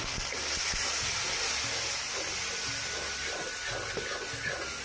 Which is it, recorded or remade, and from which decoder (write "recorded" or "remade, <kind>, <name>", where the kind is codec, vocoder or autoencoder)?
recorded